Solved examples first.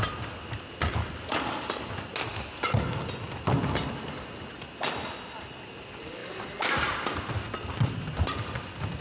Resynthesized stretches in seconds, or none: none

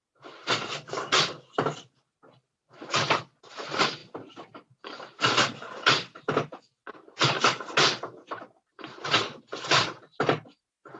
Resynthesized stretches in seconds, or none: none

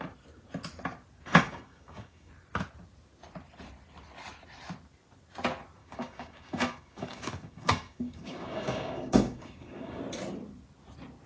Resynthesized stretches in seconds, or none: 1.3-2.3 (codec, DAC); 5.8-10.0

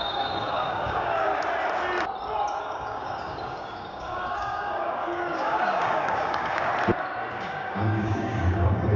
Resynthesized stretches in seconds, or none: 0.0-1.3 (codec, DAC); 2.6-6.7; 7.3-9.0